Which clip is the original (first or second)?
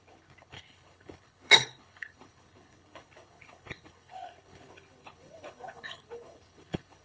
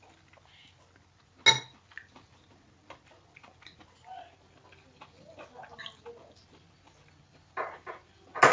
second